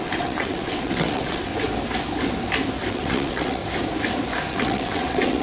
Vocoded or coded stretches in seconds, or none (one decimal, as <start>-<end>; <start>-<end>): 0.0-1.5; 2.9-3.6; 4.5-5.4